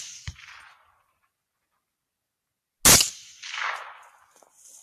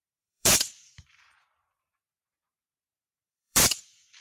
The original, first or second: first